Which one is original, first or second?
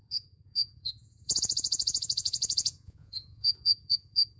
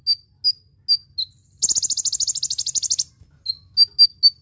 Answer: second